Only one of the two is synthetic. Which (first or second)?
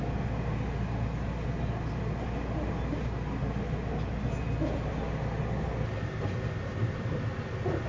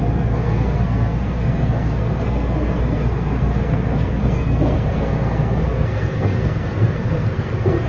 second